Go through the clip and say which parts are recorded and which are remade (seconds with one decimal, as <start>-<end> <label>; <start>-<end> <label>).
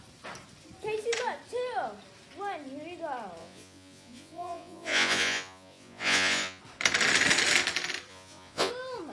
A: 0.0-3.4 recorded; 3.4-6.6 remade; 6.6-8.1 recorded; 8.1-8.7 remade; 8.7-9.1 recorded